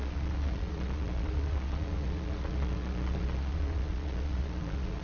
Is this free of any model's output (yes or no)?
no